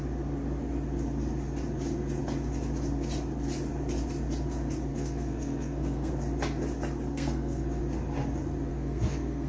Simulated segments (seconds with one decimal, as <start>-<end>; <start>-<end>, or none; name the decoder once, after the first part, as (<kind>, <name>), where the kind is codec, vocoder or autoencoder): 4.9-6.1 (codec, SNAC); 7.1-7.8; 8.7-9.5